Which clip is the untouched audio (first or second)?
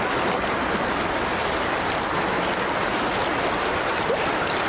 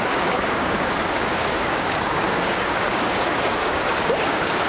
first